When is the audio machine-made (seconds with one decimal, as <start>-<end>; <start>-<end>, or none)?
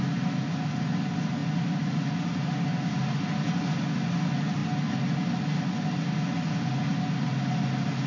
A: none